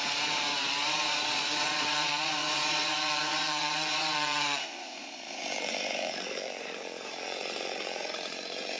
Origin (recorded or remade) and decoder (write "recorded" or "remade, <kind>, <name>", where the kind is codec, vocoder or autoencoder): remade, vocoder, Vocos